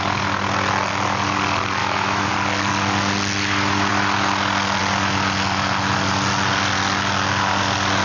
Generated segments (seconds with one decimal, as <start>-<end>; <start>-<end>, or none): 1.8-2.3